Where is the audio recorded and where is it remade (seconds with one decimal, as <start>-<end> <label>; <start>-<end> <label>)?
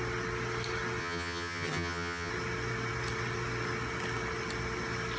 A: 0.0-1.0 recorded; 1.0-2.3 remade; 2.3-5.2 recorded